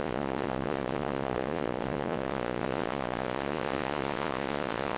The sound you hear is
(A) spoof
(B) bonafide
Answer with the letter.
A